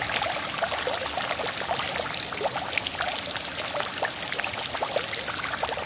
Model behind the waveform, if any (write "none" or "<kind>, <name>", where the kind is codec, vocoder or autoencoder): none